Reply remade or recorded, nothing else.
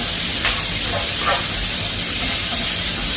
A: recorded